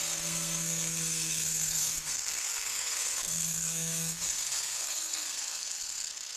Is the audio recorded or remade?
remade